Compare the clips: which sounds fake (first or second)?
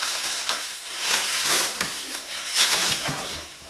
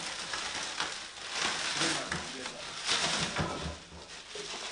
first